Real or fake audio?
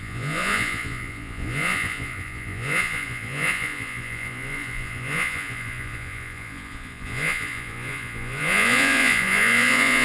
fake